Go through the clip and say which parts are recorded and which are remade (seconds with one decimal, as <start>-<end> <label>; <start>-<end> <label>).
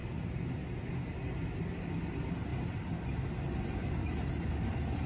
0.0-5.1 recorded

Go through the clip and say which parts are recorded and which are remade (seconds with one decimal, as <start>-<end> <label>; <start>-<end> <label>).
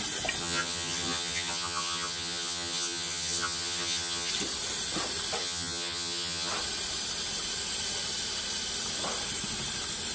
0.0-0.4 recorded; 0.4-4.3 remade; 4.3-5.4 recorded; 5.4-6.5 remade; 6.5-10.1 recorded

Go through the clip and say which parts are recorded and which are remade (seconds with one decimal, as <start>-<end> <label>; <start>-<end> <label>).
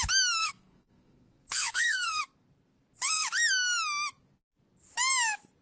0.0-0.4 recorded; 0.4-2.2 remade; 2.2-5.6 recorded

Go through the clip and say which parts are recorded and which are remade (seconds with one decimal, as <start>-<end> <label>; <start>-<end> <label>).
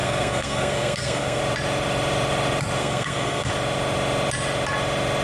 0.0-1.4 remade; 1.4-2.8 recorded; 2.8-3.5 remade; 3.5-5.2 recorded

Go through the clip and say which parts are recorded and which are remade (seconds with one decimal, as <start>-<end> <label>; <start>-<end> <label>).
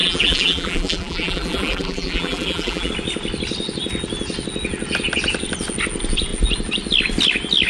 0.0-2.9 remade; 2.9-7.7 recorded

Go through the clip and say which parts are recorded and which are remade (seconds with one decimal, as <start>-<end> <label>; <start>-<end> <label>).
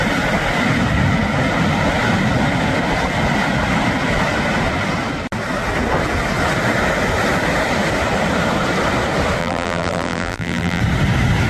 0.0-9.4 recorded; 9.4-10.8 remade; 10.8-11.5 recorded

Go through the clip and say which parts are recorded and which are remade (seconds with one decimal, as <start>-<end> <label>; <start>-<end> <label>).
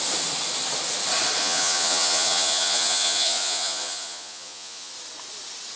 0.0-1.4 recorded; 1.4-4.9 remade; 4.9-5.8 recorded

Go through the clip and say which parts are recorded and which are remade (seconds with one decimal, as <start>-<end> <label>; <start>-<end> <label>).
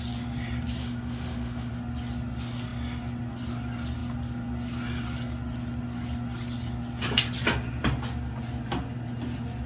0.0-0.8 recorded; 0.8-1.7 remade; 1.7-9.7 recorded